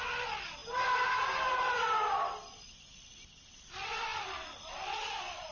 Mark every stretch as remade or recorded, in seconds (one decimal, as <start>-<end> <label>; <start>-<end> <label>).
0.0-5.5 recorded